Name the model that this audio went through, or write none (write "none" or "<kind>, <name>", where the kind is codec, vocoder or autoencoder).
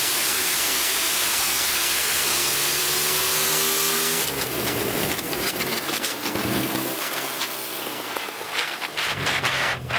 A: codec, SNAC